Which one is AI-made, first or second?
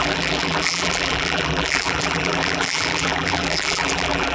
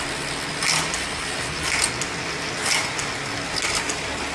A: first